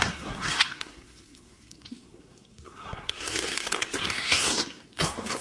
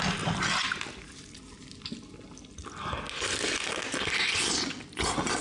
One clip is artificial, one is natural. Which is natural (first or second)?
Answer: second